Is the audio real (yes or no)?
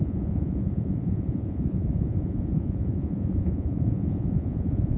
no